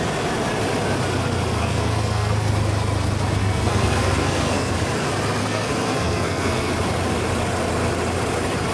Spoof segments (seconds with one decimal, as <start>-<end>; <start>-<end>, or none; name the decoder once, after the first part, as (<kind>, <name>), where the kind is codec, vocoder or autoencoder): 1.6-2.5 (codec, SNAC); 3.4-4.7; 5.4-6.7